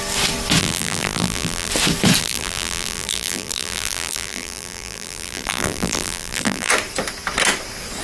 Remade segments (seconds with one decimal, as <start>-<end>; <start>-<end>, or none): 0.6-1.7; 2.2-6.7